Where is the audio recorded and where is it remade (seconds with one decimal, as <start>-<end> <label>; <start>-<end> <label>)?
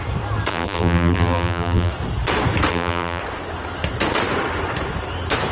0.0-0.5 recorded; 0.5-1.9 remade; 1.9-2.7 recorded; 2.7-3.2 remade; 3.2-5.5 recorded